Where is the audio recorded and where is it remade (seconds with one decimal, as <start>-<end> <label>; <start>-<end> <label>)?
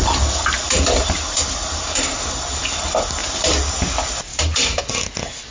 0.0-4.3 recorded; 4.3-4.8 remade; 4.8-5.5 recorded